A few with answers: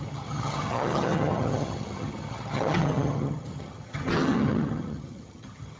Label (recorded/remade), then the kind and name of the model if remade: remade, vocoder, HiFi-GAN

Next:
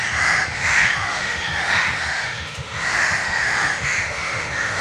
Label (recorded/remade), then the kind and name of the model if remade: remade, autoencoder, DAC-VAE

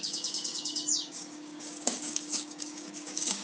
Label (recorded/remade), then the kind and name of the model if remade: remade, codec, DAC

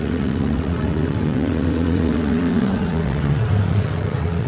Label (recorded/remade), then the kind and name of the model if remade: remade, vocoder, WaveNeXt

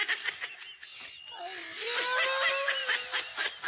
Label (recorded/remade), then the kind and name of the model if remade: recorded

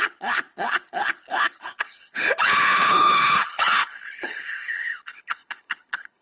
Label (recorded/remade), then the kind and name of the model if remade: remade, codec, HILCodec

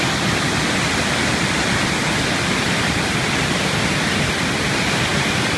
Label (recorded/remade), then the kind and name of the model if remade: remade, vocoder, BigVGAN v2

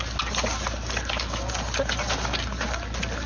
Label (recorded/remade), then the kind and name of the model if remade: recorded